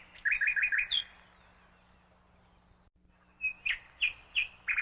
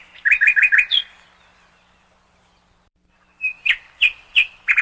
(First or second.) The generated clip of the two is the second